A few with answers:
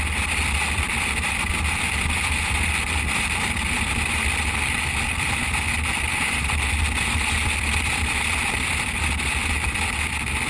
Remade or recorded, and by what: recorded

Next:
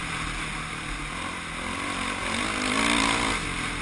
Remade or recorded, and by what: recorded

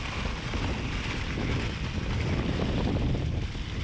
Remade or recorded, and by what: recorded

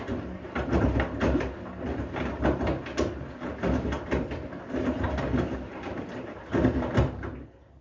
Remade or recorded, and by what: recorded